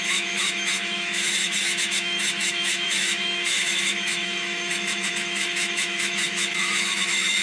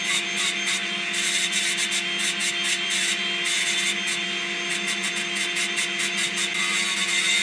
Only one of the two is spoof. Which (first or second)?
first